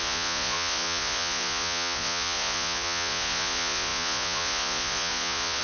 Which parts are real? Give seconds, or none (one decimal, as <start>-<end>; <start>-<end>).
none